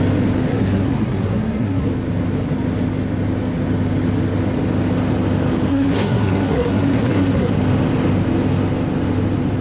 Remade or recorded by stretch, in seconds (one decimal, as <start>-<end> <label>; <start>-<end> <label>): 0.0-0.5 recorded; 0.5-1.9 remade; 1.9-5.7 recorded; 5.7-7.5 remade; 7.5-9.6 recorded